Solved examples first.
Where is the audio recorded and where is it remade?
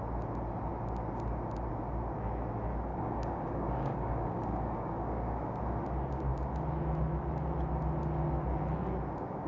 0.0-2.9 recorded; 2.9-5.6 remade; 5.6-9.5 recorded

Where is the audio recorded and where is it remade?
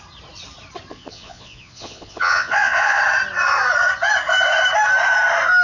0.0-0.9 recorded; 0.9-3.0 remade; 3.0-5.6 recorded